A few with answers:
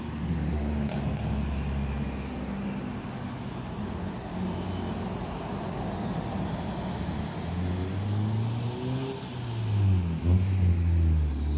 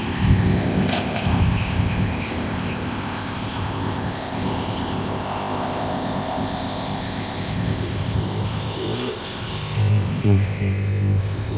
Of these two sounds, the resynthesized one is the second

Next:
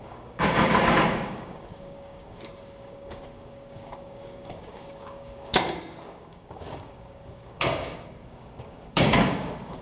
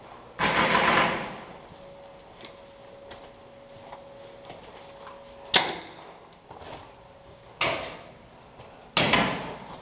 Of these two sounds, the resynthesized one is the first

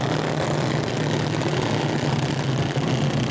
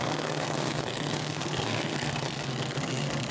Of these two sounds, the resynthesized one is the second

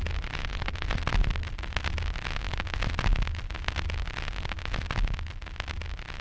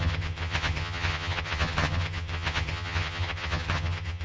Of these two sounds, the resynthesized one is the second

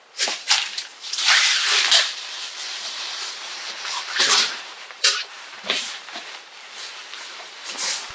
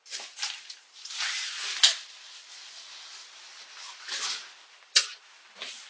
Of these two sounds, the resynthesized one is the first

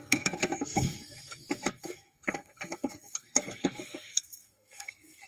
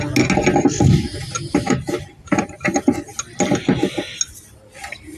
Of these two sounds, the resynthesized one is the first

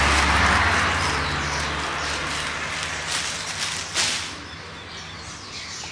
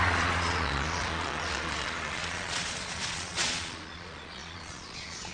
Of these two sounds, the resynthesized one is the second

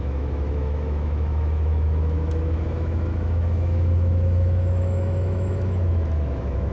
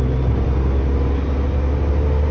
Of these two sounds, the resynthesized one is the first